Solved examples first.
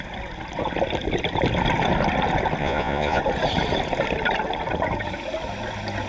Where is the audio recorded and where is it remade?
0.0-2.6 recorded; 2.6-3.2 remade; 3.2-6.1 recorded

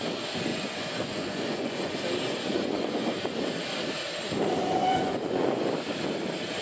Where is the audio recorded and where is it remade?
0.0-0.5 recorded; 0.5-2.0 remade; 2.0-2.5 recorded; 2.5-3.1 remade; 3.1-4.6 recorded; 4.6-5.7 remade; 5.7-6.6 recorded